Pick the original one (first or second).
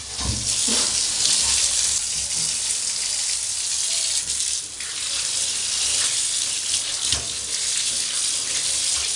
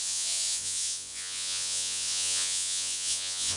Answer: first